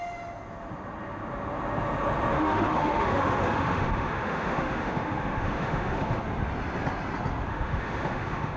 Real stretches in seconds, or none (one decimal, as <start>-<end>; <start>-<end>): 0.0-2.3; 6.2-7.5